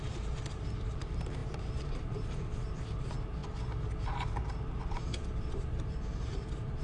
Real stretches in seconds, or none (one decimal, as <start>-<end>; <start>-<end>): 3.4-4.8